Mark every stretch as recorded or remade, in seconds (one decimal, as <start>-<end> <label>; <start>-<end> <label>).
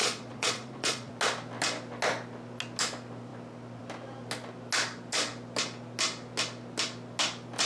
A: 0.0-1.1 remade; 1.1-7.7 recorded